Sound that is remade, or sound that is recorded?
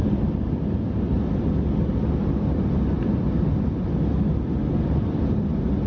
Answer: recorded